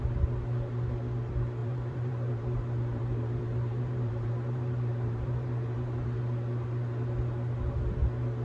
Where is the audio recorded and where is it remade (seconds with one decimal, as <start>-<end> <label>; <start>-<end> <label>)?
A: 0.0-1.6 recorded; 1.6-6.2 remade; 6.2-8.4 recorded